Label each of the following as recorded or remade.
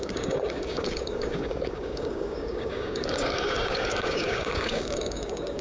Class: remade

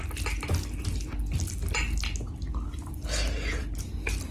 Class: recorded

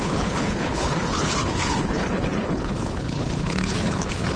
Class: remade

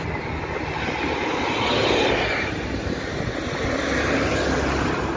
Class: recorded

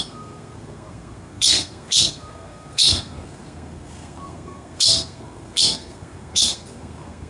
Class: remade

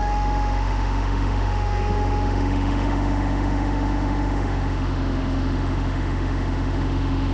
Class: remade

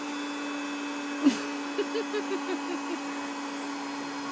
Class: recorded